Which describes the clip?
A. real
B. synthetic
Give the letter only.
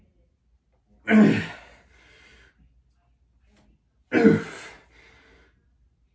A